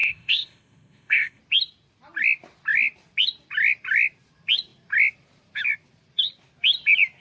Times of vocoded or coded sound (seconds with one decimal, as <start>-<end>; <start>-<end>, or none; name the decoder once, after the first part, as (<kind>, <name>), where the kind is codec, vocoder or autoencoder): 0.0-1.4 (codec, ZipCodec)